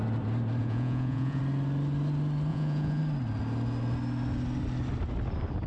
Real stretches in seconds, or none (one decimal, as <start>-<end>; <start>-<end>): 0.0-0.6; 1.4-2.5; 3.0-5.7